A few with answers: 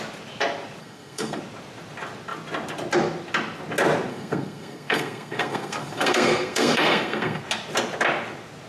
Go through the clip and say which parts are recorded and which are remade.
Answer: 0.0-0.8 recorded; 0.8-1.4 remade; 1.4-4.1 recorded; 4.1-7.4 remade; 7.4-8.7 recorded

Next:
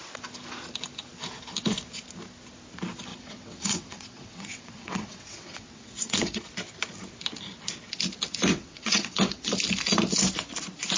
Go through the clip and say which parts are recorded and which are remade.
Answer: 0.0-3.1 recorded; 3.1-6.5 remade; 6.5-8.5 recorded; 8.5-9.5 remade; 9.5-11.0 recorded

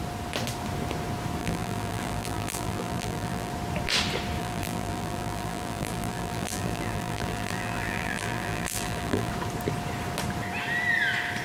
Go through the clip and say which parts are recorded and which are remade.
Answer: 0.0-1.4 recorded; 1.4-3.5 remade; 3.5-4.4 recorded; 4.4-9.3 remade; 9.3-11.4 recorded